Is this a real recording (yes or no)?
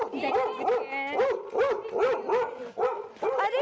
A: yes